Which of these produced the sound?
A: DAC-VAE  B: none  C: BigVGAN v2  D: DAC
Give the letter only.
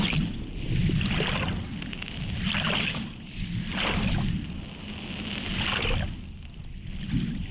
B